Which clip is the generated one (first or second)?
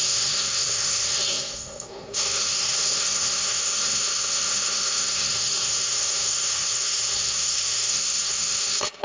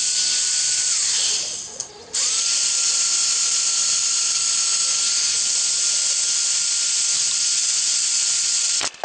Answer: first